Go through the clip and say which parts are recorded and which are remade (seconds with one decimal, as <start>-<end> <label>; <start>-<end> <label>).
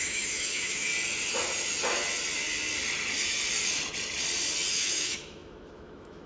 0.0-0.9 remade; 0.9-4.7 recorded; 4.7-6.3 remade